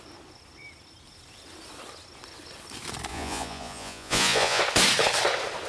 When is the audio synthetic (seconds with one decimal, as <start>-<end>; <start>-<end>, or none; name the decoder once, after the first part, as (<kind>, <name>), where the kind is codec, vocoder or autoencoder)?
3.1-4.6 (vocoder, Vocos)